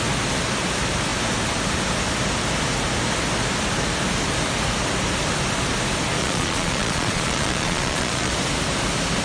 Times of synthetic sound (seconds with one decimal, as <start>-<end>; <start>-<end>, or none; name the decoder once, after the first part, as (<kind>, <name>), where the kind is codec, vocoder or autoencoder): 6.2-8.3 (vocoder, Vocos)